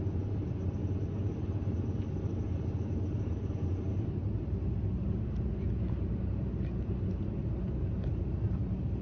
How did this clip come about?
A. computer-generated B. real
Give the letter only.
A